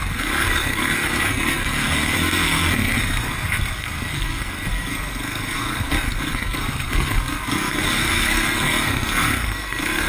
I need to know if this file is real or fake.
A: fake